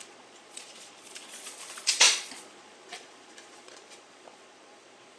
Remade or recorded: remade